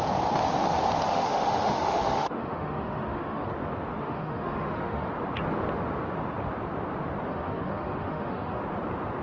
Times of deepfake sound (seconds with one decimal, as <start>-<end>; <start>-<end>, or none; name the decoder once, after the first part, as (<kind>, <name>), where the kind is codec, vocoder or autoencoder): 1.1-3.5 (autoencoder, DAC-VAE); 4.0-5.1; 7.3-8.6